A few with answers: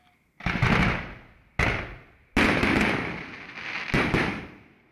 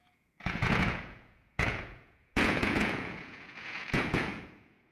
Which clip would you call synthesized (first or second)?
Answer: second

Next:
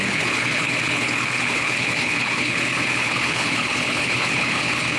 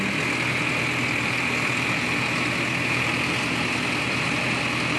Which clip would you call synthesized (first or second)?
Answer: first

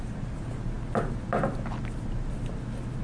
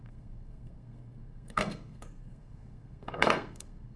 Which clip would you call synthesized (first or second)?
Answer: second